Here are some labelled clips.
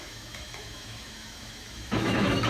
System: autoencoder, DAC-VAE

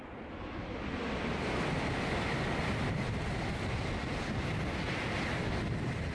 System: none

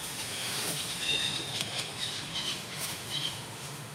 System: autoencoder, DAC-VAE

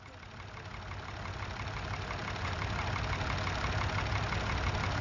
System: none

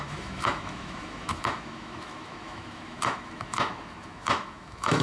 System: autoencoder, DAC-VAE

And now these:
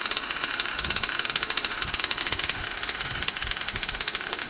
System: autoencoder, DAC-VAE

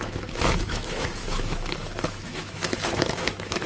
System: autoencoder, DAC-VAE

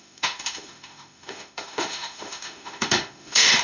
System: autoencoder, DAC-VAE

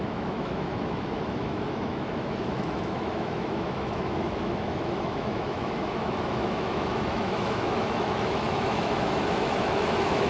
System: autoencoder, DAC-VAE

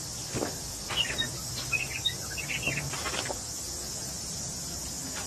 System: none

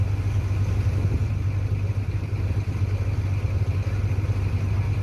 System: none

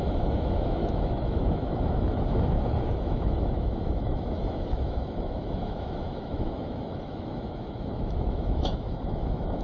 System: autoencoder, DAC-VAE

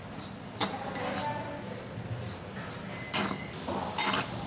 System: none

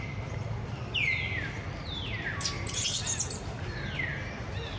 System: none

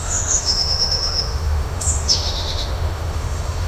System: autoencoder, DAC-VAE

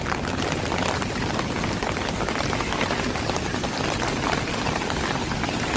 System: none